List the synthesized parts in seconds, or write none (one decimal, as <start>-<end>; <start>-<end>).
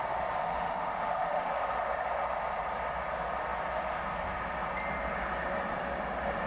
0.4-1.6